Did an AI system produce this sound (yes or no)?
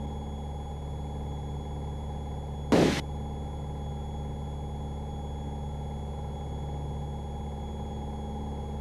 no